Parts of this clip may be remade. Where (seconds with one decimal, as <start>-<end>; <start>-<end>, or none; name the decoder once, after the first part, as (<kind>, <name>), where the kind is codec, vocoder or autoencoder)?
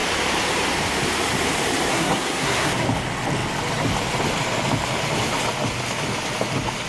1.9-2.7 (codec, SNAC)